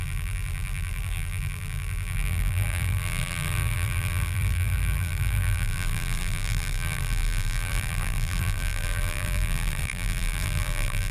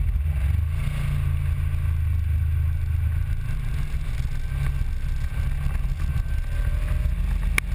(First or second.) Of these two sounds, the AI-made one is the first